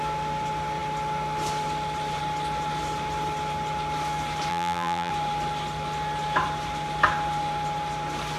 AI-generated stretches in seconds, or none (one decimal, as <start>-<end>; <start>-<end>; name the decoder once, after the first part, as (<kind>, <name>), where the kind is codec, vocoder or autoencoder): 4.5-5.1 (vocoder, BigVGAN v2)